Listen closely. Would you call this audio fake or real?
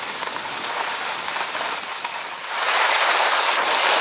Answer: fake